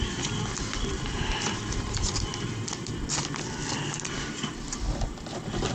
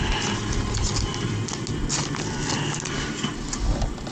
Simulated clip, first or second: first